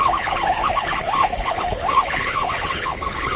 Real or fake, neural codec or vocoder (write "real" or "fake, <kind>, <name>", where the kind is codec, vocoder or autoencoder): fake, codec, HILCodec